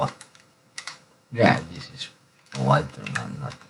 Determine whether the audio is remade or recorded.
remade